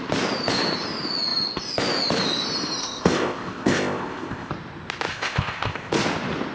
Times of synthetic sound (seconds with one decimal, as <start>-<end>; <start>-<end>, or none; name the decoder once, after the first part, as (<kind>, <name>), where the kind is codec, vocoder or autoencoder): 2.8-4.5 (codec, ZipCodec); 5.1-5.9